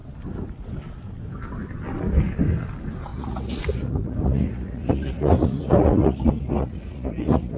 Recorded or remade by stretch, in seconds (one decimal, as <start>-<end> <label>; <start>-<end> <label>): 0.0-3.1 recorded; 3.1-7.6 remade